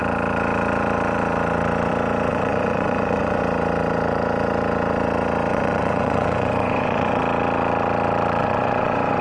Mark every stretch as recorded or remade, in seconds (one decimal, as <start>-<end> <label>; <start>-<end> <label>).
0.0-2.3 recorded; 2.3-3.4 remade; 3.4-5.5 recorded; 5.5-7.2 remade; 7.2-8.4 recorded; 8.4-9.2 remade